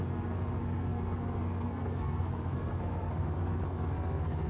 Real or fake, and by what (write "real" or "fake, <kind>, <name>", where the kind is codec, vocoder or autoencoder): fake, codec, SNAC